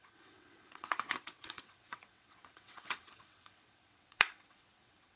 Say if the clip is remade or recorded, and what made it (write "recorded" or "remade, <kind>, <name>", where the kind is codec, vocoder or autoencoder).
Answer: remade, vocoder, WaveNeXt